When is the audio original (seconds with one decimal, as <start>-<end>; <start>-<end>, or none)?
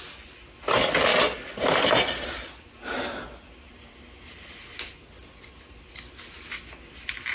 0.0-7.3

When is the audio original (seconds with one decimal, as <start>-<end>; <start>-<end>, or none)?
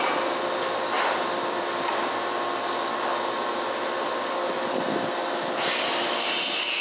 0.0-6.8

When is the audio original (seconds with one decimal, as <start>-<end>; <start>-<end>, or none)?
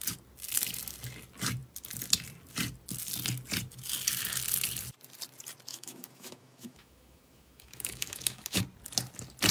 0.0-5.7; 8.6-9.5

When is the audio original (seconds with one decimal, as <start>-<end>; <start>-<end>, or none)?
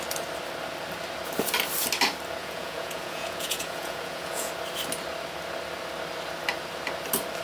0.0-2.4; 4.5-7.4